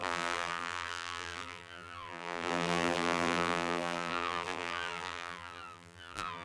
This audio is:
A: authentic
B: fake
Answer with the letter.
B